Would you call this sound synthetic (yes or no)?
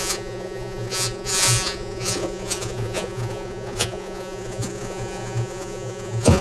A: yes